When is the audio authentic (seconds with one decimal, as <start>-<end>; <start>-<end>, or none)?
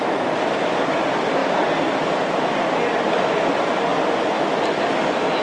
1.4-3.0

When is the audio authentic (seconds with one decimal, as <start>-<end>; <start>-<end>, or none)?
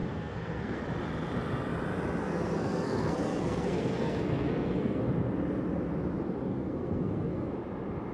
0.8-2.2; 5.0-6.5; 7.5-8.1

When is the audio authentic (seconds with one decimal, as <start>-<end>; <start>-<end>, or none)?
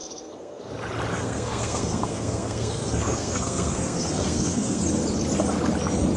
0.7-1.1; 4.8-6.2